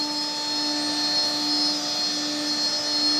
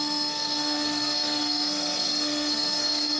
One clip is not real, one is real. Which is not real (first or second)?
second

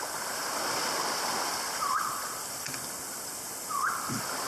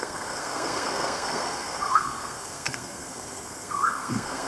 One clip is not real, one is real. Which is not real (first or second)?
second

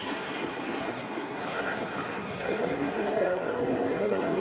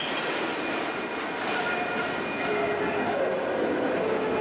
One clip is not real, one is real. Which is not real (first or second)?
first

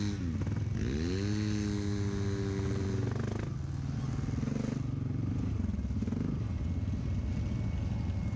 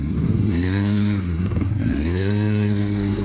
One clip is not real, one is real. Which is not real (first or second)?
second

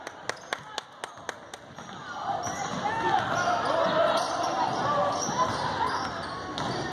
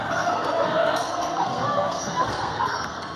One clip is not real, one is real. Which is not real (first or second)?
second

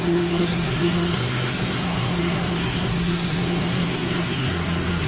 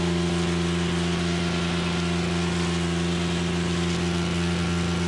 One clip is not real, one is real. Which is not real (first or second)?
first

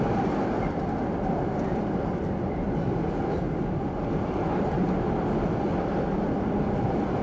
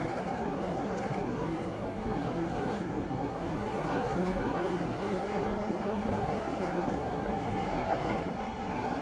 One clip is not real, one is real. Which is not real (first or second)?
second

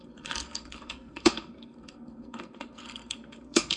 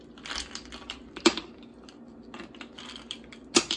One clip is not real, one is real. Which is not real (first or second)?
first